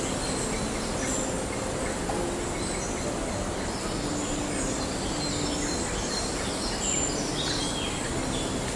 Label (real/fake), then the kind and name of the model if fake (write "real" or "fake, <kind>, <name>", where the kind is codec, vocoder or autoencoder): real